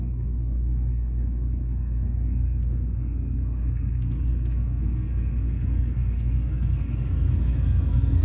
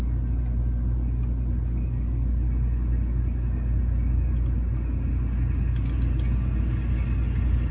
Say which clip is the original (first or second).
second